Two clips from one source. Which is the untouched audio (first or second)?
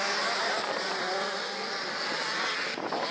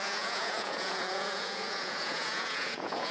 first